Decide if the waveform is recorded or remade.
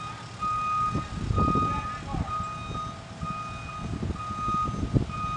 recorded